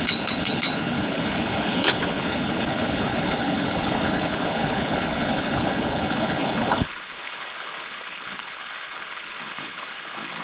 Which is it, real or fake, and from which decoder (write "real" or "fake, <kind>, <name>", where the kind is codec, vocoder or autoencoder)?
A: fake, codec, HILCodec